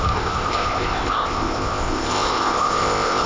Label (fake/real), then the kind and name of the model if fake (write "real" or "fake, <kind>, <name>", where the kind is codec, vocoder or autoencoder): fake, codec, ZipCodec